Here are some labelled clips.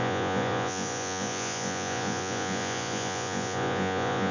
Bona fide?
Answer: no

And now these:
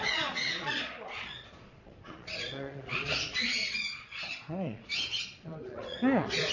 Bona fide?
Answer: no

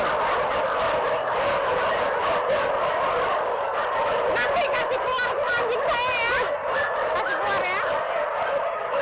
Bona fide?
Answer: yes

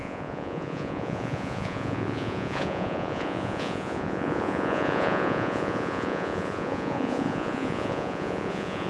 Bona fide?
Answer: no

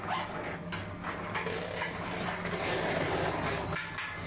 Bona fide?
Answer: yes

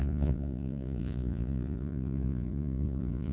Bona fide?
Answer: no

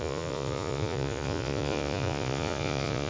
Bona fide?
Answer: no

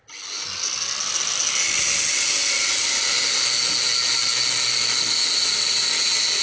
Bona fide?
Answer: yes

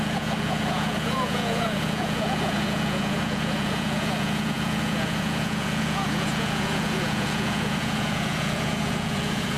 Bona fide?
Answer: no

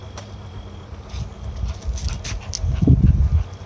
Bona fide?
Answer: yes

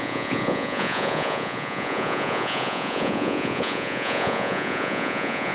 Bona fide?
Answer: no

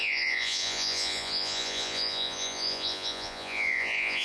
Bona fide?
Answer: no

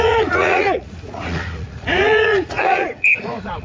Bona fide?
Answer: no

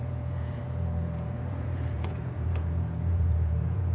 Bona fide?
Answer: no